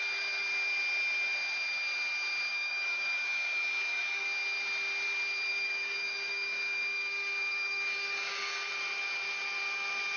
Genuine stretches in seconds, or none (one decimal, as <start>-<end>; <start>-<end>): 0.0-2.5; 4.2-5.5; 8.7-10.2